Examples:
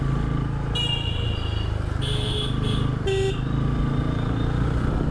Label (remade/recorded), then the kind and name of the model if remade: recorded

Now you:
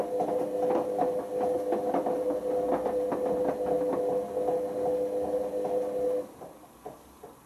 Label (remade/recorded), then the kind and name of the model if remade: recorded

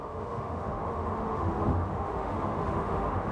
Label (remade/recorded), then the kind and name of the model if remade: remade, autoencoder, DAC-VAE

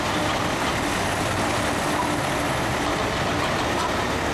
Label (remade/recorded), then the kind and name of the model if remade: recorded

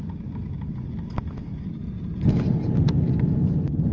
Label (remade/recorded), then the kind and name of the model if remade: recorded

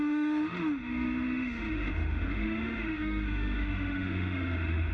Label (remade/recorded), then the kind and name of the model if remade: remade, autoencoder, DAC-VAE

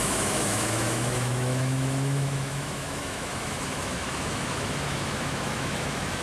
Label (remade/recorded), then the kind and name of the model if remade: remade, autoencoder, DAC-VAE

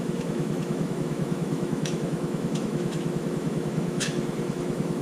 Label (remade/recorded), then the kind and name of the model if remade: remade, autoencoder, DAC-VAE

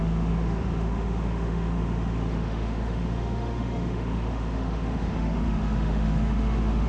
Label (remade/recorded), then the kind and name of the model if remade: remade, autoencoder, DAC-VAE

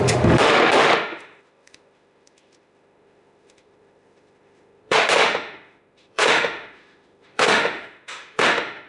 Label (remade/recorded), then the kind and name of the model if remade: remade, autoencoder, DAC-VAE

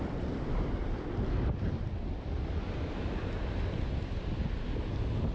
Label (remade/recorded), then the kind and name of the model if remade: recorded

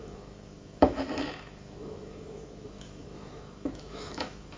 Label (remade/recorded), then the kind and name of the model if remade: remade, autoencoder, DAC-VAE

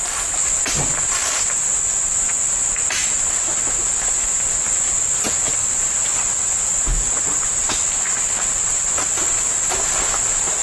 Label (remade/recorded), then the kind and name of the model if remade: recorded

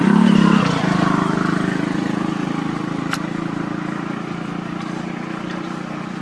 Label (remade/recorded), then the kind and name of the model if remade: recorded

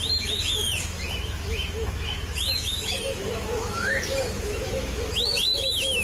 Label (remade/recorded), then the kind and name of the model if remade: remade, autoencoder, DAC-VAE